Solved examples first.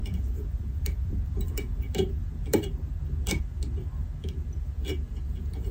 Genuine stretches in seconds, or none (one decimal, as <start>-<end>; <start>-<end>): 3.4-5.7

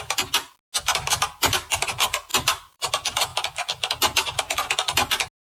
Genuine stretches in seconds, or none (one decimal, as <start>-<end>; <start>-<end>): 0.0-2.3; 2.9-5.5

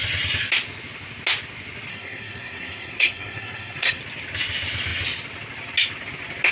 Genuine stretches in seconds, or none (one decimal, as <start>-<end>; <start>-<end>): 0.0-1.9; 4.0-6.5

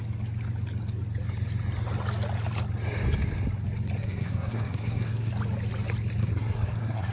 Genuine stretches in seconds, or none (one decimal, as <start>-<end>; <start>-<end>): 0.0-4.0; 5.3-6.2

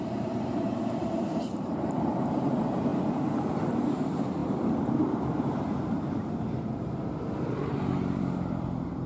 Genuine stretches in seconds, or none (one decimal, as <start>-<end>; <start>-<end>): none